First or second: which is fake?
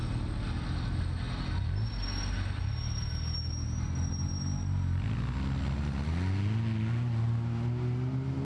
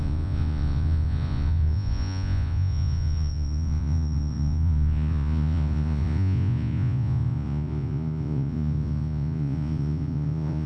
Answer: second